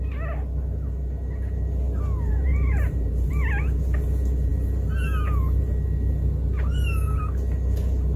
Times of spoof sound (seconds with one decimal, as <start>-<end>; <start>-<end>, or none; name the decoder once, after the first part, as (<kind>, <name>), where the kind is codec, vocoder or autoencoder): 2.3-3.3 (vocoder, BigVGAN v2)